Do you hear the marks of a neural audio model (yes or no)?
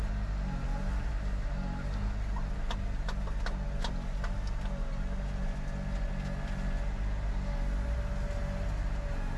no